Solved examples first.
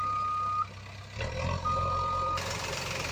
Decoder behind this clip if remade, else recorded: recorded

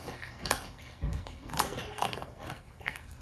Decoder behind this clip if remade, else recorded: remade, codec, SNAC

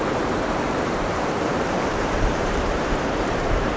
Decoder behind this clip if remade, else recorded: remade, vocoder, BigVGAN v2